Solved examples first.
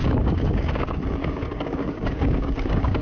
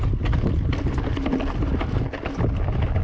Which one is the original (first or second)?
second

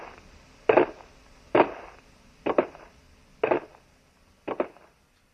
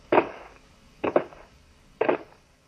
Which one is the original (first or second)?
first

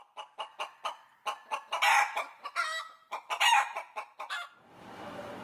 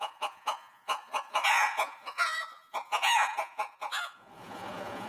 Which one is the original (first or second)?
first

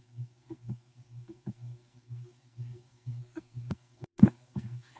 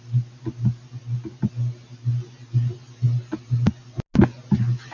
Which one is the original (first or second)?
second